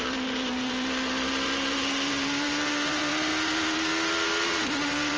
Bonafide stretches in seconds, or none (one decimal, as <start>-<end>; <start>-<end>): none